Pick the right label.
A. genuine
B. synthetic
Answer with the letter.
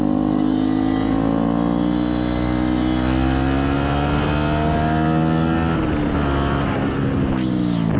A